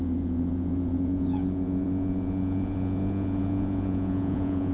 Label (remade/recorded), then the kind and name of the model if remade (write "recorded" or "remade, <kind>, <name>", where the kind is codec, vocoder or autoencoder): remade, vocoder, Vocos